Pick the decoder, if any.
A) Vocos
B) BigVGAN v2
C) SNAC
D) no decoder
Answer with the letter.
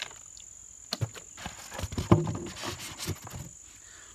D